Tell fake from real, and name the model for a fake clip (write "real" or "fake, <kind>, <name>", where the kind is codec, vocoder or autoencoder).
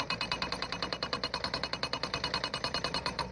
fake, vocoder, BigVGAN v2